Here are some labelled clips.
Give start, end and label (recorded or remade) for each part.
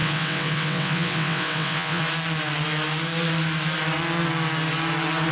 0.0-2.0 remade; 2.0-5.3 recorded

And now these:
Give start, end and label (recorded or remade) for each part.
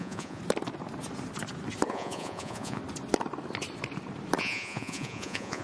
0.0-0.4 remade; 0.4-1.9 recorded; 1.9-2.8 remade; 2.8-4.4 recorded; 4.4-5.6 remade